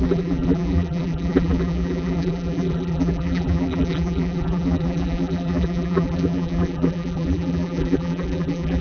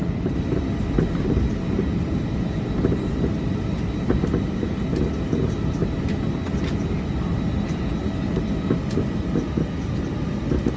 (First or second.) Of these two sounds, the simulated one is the first